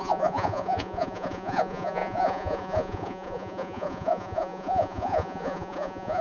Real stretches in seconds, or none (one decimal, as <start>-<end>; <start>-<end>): none

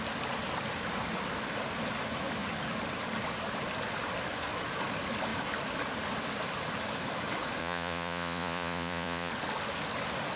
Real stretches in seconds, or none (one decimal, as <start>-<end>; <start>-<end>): 0.0-7.6; 9.3-10.4

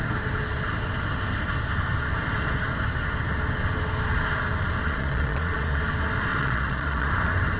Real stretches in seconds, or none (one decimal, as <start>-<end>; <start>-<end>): 0.0-4.8; 5.8-6.3; 7.1-7.6

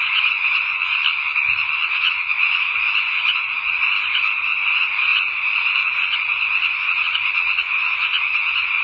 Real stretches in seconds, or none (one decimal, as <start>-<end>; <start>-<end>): 1.0-1.9

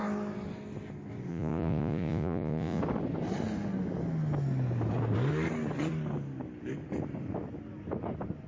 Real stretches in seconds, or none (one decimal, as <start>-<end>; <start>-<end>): 0.0-1.3; 2.8-8.5